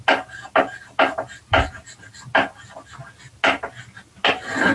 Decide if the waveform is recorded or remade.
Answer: recorded